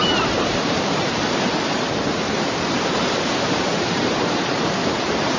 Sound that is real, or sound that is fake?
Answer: fake